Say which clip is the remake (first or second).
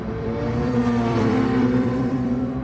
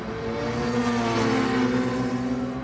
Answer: first